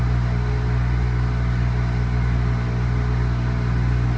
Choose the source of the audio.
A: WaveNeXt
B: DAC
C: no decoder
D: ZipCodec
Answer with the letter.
C